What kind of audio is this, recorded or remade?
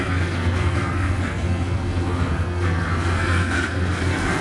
remade